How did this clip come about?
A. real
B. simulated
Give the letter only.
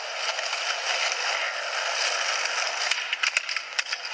A